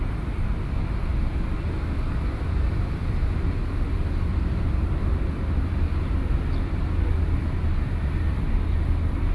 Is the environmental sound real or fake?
fake